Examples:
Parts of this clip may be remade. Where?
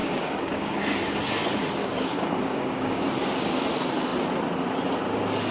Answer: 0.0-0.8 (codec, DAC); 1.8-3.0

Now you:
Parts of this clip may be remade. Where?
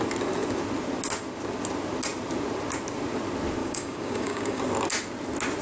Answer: 3.6-4.6 (codec, DAC)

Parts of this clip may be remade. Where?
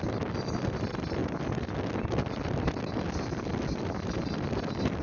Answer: none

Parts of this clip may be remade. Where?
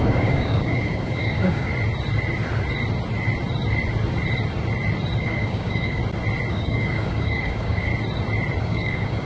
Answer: 0.0-1.7 (codec, DAC); 5.2-6.0; 6.5-7.9; 8.6-9.2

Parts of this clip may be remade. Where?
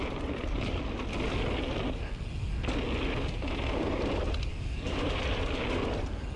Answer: 4.5-5.1 (codec, DAC)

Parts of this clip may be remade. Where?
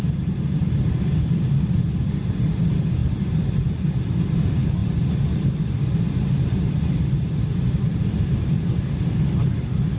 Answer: none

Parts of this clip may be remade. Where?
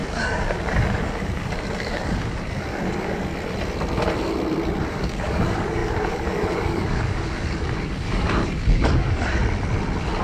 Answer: 0.0-3.3 (codec, DAC); 4.8-9.4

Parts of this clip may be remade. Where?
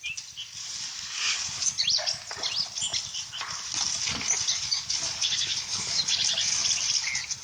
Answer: 0.6-1.7 (codec, DAC); 4.5-6.0